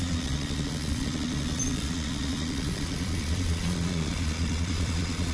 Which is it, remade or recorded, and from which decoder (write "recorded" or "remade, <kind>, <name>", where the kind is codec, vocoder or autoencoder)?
remade, vocoder, Vocos